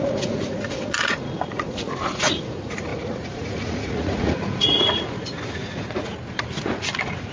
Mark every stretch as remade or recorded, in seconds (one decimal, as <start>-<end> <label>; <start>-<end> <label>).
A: 0.0-6.1 remade; 6.1-6.6 recorded; 6.6-7.3 remade